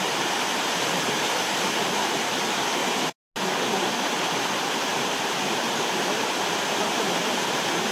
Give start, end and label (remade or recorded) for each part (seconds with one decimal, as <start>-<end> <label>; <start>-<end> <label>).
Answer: 0.0-2.8 remade; 2.8-4.0 recorded; 4.0-7.9 remade